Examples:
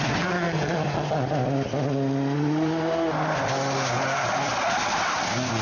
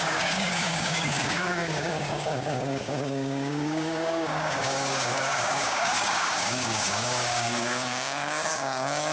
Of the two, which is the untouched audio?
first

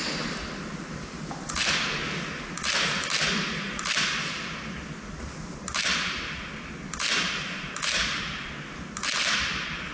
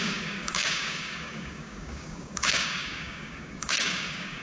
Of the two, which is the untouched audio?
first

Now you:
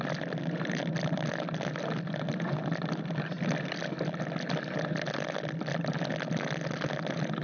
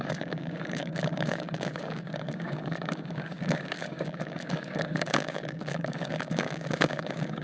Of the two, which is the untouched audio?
first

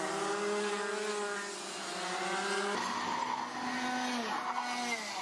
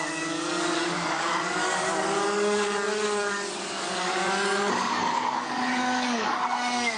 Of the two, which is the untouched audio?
first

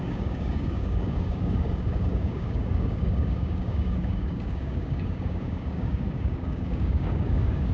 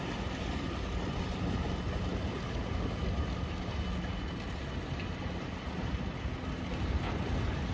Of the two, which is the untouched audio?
second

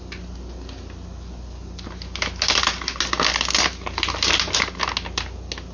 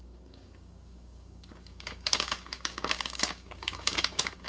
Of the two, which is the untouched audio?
first